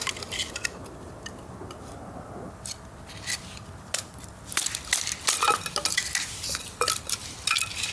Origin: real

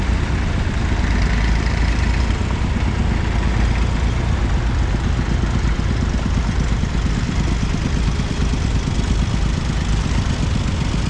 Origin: real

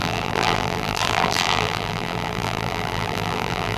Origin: fake